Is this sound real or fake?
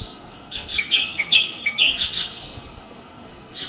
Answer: fake